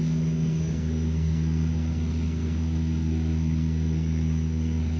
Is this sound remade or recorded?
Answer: remade